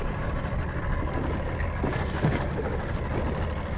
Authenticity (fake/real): real